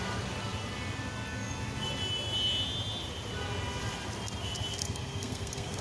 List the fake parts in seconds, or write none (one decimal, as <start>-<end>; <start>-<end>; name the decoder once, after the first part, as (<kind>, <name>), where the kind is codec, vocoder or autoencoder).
4.8-5.8 (codec, SNAC)